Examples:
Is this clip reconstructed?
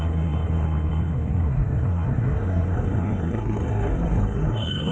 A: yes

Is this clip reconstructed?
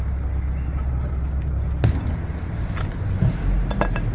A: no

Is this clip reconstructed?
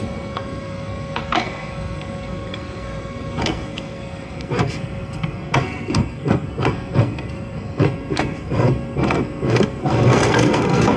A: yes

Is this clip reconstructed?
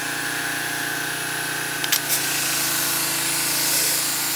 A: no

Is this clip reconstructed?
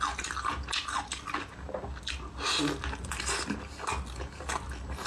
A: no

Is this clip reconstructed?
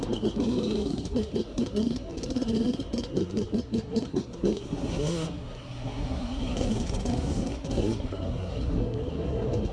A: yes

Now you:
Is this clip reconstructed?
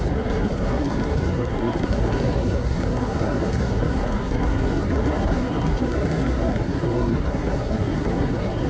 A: yes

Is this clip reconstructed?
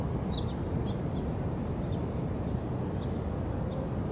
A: no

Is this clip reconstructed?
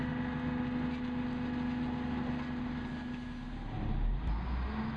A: no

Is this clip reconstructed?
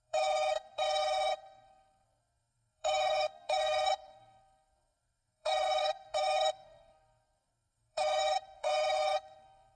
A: yes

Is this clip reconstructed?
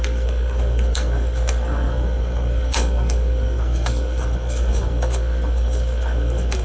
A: yes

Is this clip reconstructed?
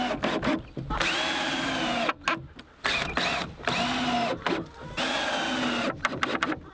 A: no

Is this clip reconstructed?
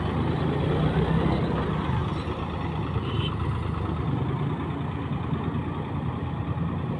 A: no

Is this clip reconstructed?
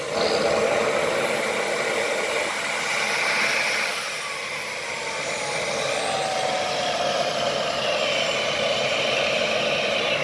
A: no